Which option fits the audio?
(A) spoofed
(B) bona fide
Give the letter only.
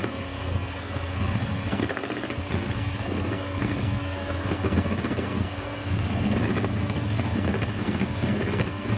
A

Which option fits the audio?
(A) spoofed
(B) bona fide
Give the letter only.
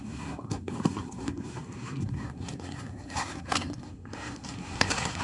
A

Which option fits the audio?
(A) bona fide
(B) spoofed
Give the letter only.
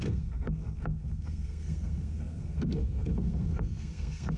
B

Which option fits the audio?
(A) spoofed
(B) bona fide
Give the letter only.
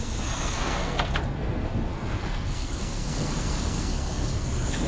A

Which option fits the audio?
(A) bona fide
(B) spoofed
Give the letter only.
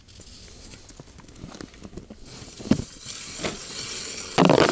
A